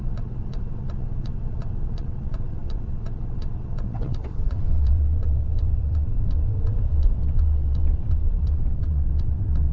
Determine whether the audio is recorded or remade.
remade